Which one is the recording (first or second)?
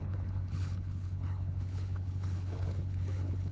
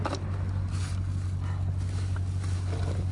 second